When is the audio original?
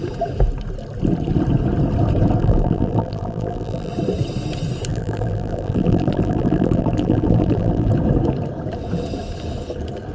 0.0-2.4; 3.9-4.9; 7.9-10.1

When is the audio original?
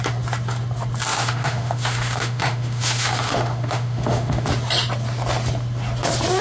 0.0-1.1; 4.5-6.4